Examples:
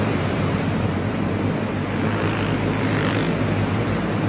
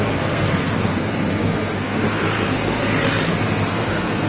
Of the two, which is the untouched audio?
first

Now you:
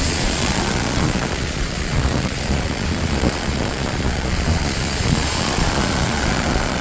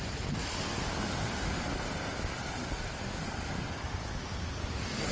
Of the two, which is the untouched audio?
second